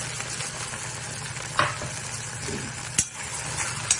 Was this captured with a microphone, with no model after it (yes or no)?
yes